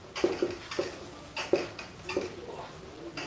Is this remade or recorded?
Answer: recorded